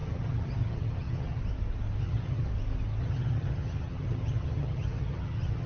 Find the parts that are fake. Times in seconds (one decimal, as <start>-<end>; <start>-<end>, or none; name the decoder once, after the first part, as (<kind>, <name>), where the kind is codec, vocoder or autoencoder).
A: 0.0-1.4 (vocoder, HiFi-GAN); 2.0-2.5; 3.0-5.7